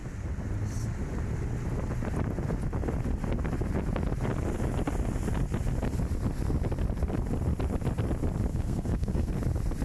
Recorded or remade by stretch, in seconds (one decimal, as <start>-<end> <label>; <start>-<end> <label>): 0.0-8.5 recorded; 8.5-9.3 remade; 9.3-9.8 recorded